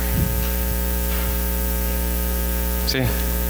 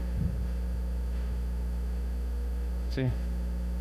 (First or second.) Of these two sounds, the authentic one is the first